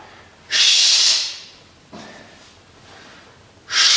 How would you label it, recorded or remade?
recorded